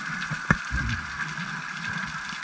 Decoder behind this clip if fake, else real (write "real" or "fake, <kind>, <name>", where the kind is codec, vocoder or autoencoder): real